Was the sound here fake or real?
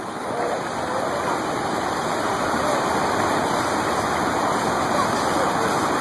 real